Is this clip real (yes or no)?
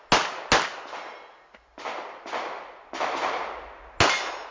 yes